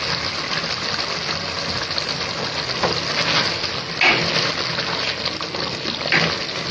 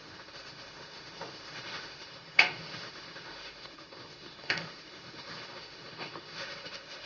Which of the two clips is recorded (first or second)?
first